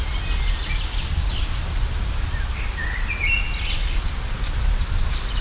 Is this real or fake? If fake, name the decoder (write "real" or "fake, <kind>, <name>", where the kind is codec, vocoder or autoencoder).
real